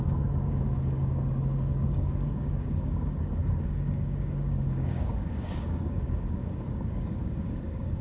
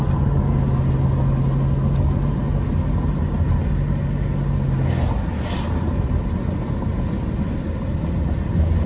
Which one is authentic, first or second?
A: second